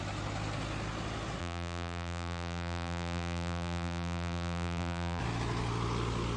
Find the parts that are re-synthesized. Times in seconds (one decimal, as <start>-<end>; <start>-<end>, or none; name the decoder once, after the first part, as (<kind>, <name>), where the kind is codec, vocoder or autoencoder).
1.4-5.2 (vocoder, BigVGAN v2)